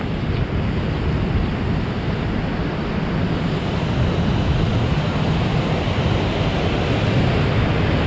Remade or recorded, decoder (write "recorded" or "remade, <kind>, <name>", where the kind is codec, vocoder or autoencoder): recorded